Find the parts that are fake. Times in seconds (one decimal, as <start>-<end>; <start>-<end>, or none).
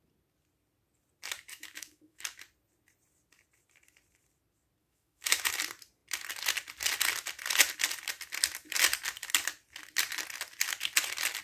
1.5-2.2; 4.8-5.5